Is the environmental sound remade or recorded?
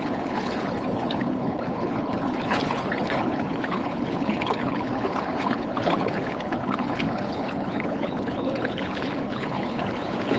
remade